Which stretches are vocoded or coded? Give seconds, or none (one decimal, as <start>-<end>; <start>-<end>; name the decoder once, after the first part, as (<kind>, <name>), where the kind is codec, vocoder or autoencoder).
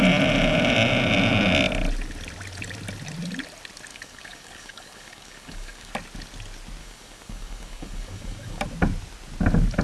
3.9-5.9 (codec, DAC); 6.8-8.6